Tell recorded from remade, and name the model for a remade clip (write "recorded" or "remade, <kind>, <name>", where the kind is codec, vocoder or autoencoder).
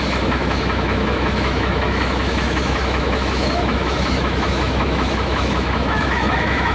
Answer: remade, autoencoder, DAC-VAE